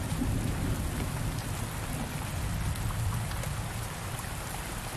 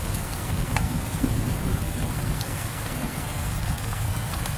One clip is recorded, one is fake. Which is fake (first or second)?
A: second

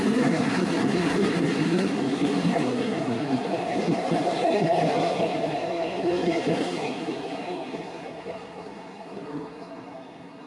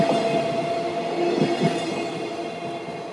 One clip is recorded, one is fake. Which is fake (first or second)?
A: first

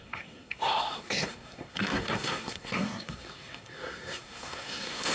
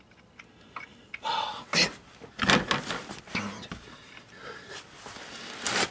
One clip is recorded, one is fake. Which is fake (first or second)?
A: first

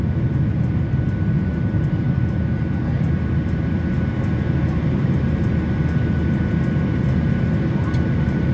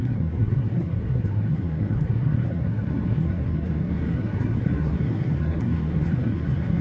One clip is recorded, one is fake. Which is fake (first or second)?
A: second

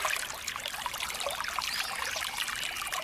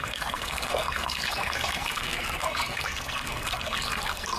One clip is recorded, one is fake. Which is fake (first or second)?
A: second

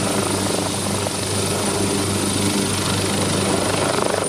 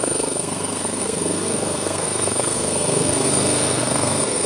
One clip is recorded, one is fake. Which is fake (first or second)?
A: second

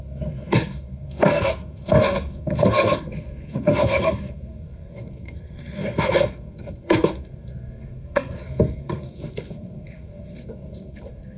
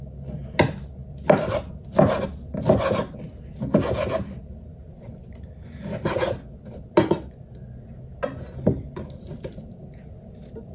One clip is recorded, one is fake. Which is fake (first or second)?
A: first